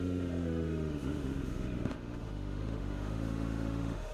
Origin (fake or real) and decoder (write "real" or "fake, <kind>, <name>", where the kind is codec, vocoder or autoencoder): fake, autoencoder, DAC-VAE